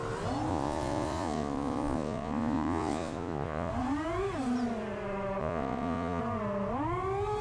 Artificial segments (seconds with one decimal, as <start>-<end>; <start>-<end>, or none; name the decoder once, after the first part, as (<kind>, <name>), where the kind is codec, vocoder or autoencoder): 0.5-3.7 (vocoder, Vocos); 5.4-6.2